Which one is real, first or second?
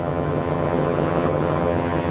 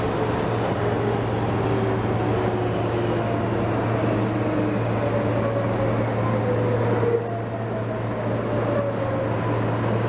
second